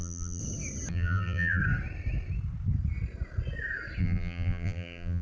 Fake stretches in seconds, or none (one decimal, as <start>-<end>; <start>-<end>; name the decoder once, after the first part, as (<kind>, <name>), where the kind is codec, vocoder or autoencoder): 0.0-0.4 (vocoder, BigVGAN v2); 0.9-1.6; 4.0-5.2